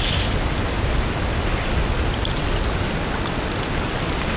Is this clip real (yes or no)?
yes